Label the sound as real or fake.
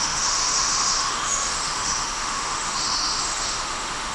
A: fake